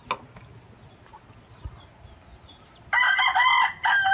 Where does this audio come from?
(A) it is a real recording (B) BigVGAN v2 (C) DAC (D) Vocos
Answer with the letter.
A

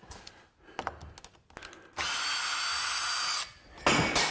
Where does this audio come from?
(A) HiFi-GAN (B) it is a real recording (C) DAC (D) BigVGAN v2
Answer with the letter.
B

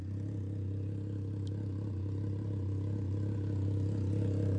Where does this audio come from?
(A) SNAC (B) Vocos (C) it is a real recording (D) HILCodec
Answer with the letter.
C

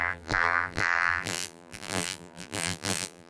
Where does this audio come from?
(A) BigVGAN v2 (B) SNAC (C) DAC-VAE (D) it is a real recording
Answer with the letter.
A